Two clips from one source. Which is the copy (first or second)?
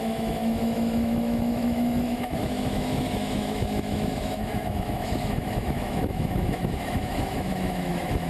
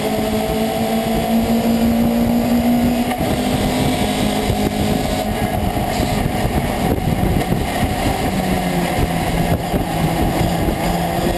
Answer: first